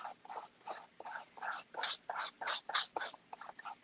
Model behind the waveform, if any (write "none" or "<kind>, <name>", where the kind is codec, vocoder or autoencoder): none